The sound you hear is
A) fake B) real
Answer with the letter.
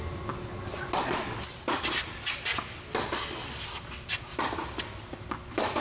B